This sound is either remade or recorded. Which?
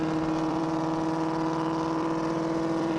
remade